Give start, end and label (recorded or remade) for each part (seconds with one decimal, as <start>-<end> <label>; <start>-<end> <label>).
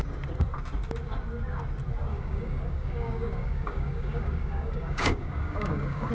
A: 0.0-2.1 recorded; 2.1-6.1 remade